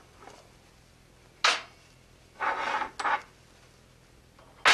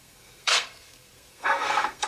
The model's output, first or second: second